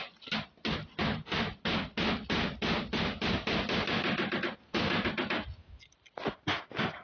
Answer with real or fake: real